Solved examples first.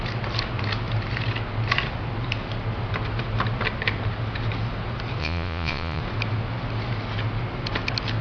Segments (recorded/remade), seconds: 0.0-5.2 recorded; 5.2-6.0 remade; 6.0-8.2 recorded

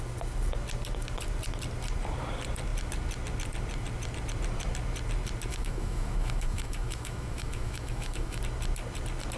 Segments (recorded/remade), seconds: 0.0-5.5 recorded; 5.5-8.4 remade; 8.4-9.4 recorded

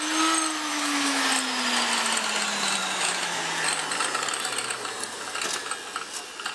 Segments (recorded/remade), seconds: 0.0-0.7 recorded; 0.7-1.2 remade; 1.2-2.8 recorded; 2.8-3.4 remade; 3.4-6.5 recorded

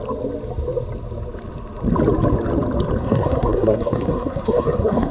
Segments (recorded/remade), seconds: 0.0-3.0 recorded; 3.0-5.1 remade

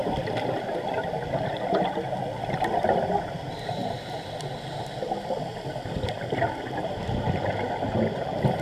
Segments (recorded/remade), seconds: 0.0-5.5 recorded; 5.5-6.1 remade; 6.1-8.6 recorded

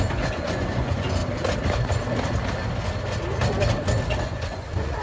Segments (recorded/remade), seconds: 0.0-1.2 remade; 1.2-4.2 recorded; 4.2-5.0 remade

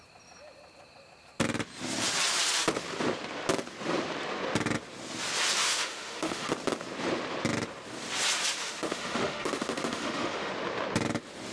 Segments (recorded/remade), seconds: 0.0-5.6 recorded; 5.6-6.5 remade; 6.5-8.6 recorded; 8.6-10.5 remade; 10.5-11.5 recorded

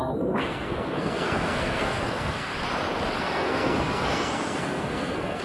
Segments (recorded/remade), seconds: 0.0-2.5 remade; 2.5-3.2 recorded; 3.2-5.4 remade